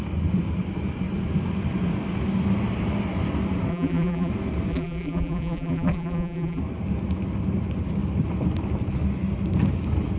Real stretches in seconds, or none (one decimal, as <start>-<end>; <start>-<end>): 0.0-3.7; 4.3-4.7; 6.6-10.2